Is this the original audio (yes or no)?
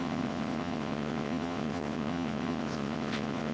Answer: no